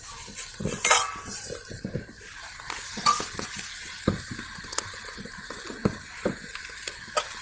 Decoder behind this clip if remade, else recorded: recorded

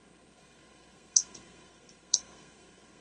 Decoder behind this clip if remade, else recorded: remade, codec, SNAC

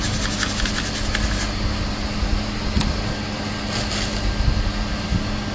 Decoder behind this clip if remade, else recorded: recorded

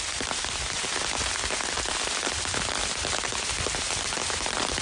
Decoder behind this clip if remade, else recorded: remade, vocoder, BigVGAN v2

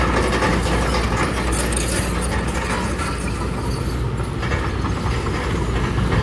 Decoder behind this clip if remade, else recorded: recorded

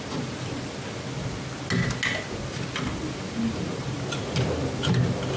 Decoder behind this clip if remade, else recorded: recorded